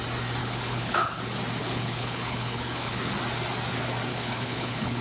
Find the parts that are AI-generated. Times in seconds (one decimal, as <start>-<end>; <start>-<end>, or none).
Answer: 0.4-1.2; 1.6-3.1; 4.1-5.0